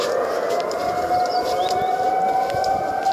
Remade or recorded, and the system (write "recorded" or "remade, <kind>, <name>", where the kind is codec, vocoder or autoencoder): recorded